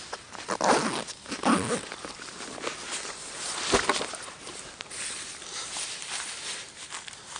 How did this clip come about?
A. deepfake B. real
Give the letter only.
B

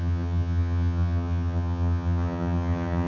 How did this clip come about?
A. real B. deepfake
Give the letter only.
B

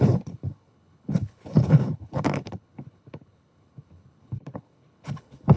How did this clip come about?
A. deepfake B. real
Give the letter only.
A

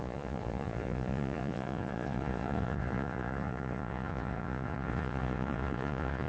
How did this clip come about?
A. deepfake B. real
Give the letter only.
A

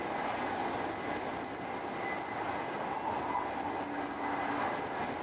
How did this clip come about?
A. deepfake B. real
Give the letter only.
B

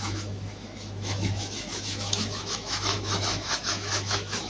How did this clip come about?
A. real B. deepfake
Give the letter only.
B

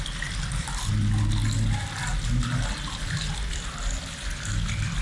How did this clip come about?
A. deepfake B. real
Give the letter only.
B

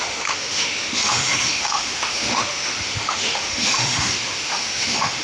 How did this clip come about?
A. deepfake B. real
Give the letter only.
A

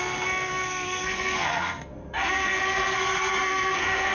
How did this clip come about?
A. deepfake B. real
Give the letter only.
A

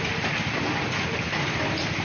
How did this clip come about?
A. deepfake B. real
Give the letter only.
B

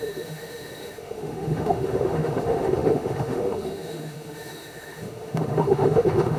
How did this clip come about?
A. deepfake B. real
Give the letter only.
A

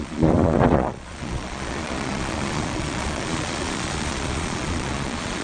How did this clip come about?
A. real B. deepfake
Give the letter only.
B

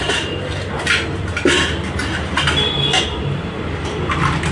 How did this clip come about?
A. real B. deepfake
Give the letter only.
A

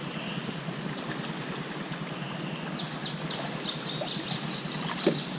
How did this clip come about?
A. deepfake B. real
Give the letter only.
B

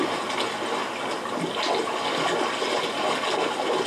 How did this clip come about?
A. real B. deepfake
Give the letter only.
A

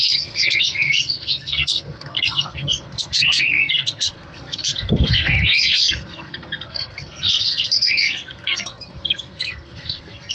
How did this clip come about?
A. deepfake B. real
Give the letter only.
A